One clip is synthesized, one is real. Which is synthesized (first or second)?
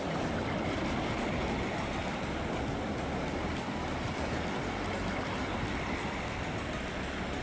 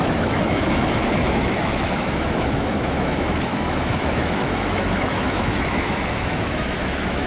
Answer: second